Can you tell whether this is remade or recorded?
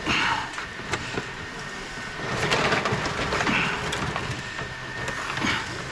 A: recorded